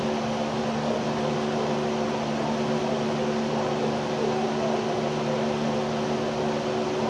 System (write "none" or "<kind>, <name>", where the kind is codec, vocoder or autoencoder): vocoder, BigVGAN v2